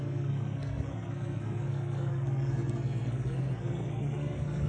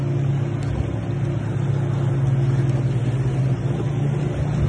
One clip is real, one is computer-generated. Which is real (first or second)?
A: second